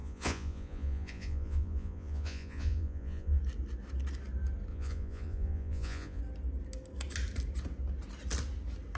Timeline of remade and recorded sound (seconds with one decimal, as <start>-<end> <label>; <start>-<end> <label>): 0.0-3.4 remade; 3.4-4.7 recorded; 4.7-6.2 remade; 6.2-9.0 recorded